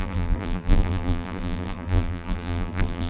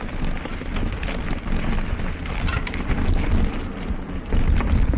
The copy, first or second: first